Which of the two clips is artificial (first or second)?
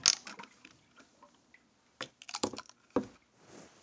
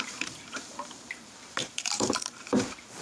second